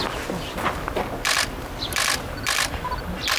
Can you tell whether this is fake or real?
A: real